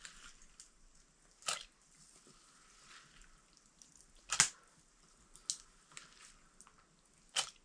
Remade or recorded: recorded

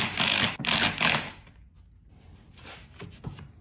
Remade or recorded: recorded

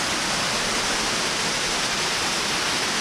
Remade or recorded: recorded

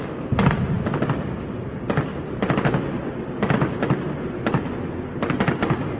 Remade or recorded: recorded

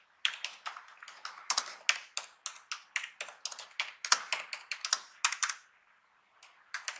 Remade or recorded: recorded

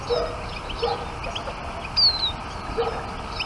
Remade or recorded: recorded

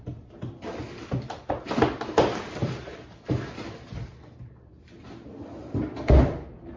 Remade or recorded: recorded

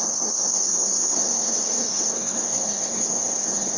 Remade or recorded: remade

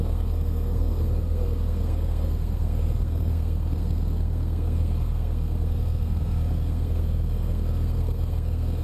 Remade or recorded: remade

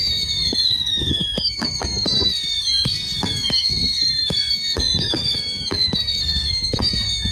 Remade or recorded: remade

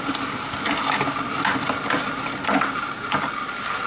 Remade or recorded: recorded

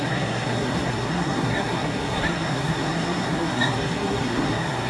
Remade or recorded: remade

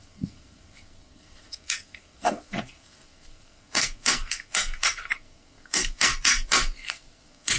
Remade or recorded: remade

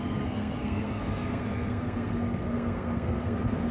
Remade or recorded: remade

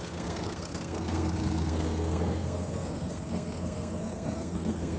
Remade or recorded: remade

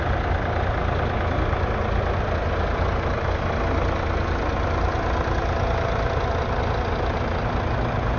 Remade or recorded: recorded